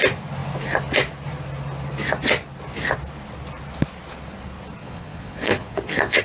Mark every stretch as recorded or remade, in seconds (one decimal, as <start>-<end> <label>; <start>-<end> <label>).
0.0-4.8 recorded; 4.8-6.2 remade